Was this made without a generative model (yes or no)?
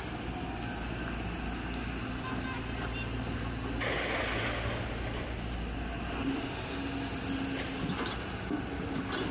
yes